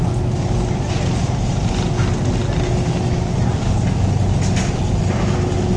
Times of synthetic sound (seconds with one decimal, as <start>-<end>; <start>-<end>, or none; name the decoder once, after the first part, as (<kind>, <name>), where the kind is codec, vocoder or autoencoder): none